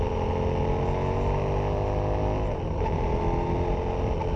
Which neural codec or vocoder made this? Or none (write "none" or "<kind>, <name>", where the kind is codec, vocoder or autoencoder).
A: none